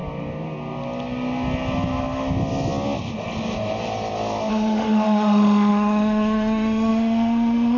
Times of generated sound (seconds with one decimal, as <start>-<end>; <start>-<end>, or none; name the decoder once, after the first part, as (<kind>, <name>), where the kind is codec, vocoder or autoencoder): 4.5-7.8 (autoencoder, DAC-VAE)